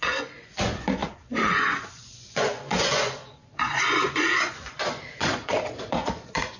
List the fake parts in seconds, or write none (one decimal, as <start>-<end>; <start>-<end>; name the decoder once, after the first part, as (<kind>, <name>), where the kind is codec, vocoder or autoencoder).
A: 0.0-6.6 (vocoder, Vocos)